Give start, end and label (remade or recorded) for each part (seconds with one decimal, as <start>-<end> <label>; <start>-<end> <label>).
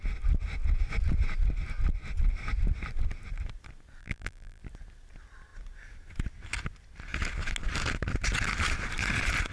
0.0-4.0 recorded; 4.0-4.6 remade; 4.6-9.5 recorded